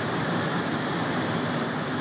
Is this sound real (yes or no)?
yes